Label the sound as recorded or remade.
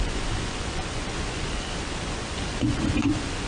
remade